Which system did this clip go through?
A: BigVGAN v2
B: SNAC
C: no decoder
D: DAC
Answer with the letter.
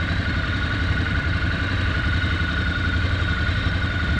A